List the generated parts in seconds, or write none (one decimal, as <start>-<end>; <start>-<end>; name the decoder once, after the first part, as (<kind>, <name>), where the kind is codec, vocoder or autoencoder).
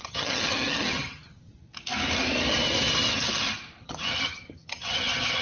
0.0-1.5 (vocoder, HiFi-GAN); 3.8-5.4